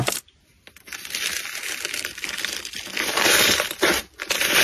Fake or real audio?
fake